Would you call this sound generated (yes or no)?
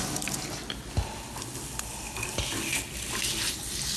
no